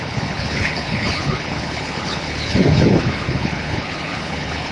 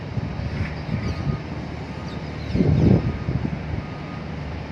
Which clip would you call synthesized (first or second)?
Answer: first